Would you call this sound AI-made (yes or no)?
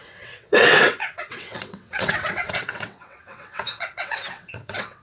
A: yes